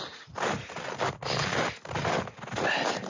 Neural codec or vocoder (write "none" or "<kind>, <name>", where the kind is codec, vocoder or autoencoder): none